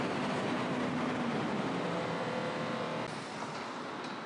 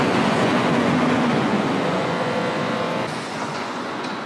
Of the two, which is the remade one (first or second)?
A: second